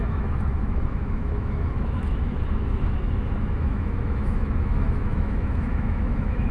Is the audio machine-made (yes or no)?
yes